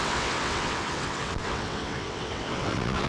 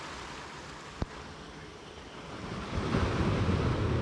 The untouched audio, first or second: second